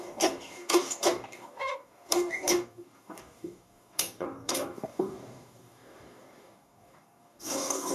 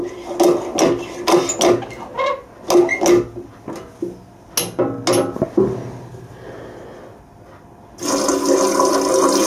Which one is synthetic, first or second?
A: first